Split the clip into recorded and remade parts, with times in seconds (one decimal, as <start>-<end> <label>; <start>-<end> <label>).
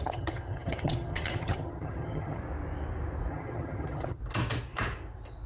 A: 0.0-2.4 remade; 2.4-3.3 recorded; 3.3-4.2 remade; 4.2-5.5 recorded